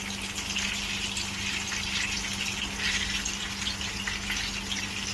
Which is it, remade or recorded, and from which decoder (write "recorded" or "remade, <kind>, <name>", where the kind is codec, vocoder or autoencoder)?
recorded